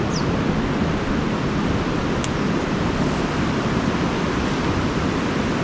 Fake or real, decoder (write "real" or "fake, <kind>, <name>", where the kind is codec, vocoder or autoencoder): real